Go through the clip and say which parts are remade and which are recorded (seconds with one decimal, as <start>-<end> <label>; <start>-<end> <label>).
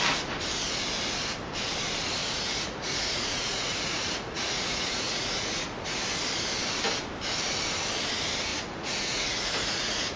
0.0-2.2 recorded; 2.2-6.0 remade; 6.0-8.5 recorded; 8.5-10.2 remade